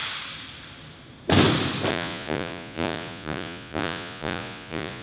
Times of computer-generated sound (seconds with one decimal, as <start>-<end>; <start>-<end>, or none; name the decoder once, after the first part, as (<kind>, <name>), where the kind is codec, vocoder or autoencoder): 1.9-5.0 (vocoder, Vocos)